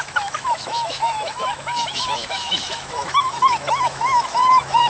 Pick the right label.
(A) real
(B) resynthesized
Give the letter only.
B